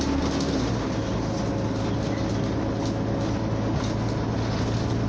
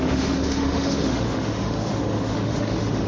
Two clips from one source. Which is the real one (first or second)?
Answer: first